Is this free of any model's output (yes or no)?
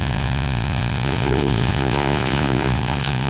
no